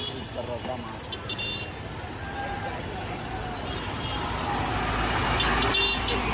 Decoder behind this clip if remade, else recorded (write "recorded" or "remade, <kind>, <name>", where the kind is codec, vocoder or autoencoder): recorded